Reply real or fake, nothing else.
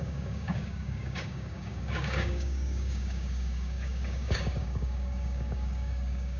fake